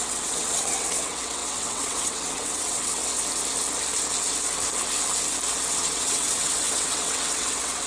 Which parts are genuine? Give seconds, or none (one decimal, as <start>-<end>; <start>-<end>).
3.0-5.7